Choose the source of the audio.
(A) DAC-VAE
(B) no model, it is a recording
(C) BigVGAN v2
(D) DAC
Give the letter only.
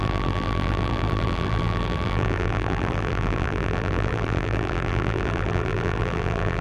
C